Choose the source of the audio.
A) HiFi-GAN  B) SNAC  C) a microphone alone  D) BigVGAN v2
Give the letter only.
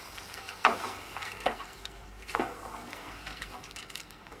B